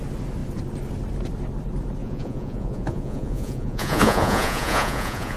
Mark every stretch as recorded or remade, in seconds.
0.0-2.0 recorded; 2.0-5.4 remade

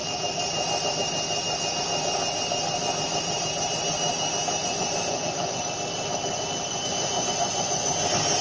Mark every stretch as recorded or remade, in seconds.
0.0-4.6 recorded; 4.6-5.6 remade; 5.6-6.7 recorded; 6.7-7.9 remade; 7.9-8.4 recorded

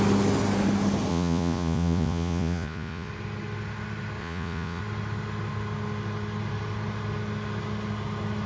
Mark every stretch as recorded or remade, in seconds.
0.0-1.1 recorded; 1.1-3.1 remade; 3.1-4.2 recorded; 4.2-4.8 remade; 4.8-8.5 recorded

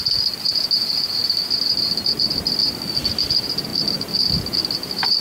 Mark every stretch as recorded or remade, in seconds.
0.0-5.2 recorded

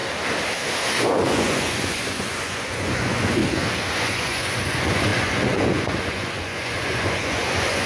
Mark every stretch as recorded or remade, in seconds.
0.0-1.0 recorded; 1.0-3.4 remade; 3.4-3.9 recorded; 3.9-7.9 remade

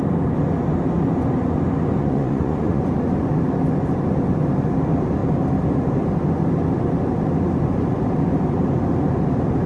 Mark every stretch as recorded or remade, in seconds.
0.0-2.0 recorded; 2.0-2.8 remade; 2.8-9.7 recorded